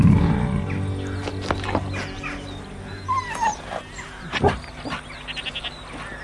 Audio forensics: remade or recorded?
recorded